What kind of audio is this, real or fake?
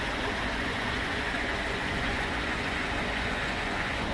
fake